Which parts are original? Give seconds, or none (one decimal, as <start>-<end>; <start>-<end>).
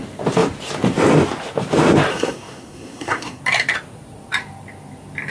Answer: 0.0-2.1; 3.4-5.3